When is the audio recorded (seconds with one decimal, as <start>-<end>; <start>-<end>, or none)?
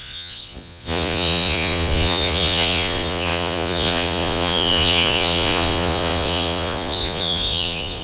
none